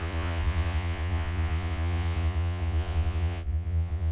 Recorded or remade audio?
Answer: remade